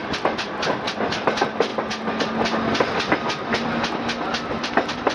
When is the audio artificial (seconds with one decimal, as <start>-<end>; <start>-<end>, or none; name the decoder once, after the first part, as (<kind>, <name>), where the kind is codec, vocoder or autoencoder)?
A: 0.0-0.5 (vocoder, BigVGAN v2)